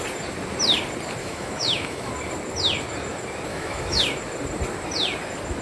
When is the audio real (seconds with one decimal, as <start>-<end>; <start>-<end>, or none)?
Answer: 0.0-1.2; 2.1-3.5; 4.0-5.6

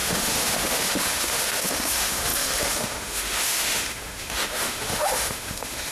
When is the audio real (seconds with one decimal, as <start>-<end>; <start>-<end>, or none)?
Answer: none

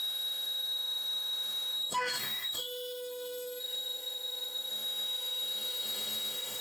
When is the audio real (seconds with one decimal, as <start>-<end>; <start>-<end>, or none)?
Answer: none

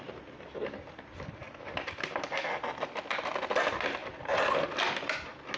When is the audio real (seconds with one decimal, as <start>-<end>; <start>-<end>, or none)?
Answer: 0.0-5.6

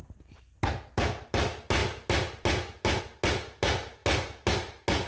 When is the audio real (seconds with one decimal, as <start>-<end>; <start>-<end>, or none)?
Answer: 0.0-5.1